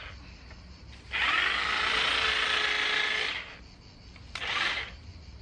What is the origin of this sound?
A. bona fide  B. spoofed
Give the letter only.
A